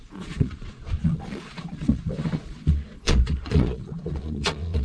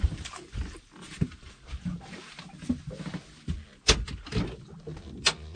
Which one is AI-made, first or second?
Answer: first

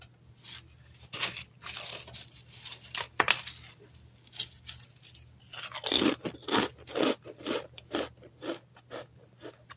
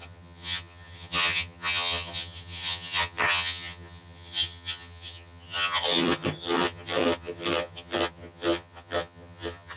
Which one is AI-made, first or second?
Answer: second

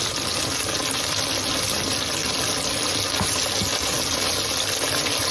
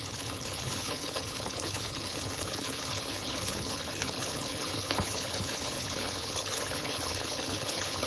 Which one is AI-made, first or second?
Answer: second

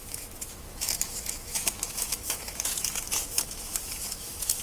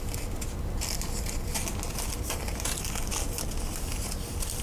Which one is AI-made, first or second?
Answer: first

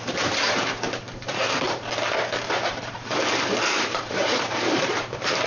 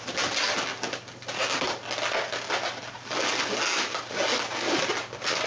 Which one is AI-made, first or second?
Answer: first